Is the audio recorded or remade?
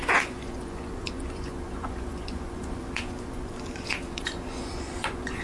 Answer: remade